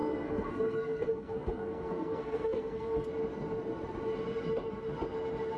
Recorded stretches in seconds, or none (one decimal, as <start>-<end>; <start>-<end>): 3.1-5.6